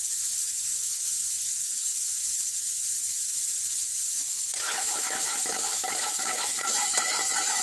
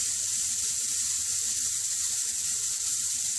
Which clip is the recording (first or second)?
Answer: second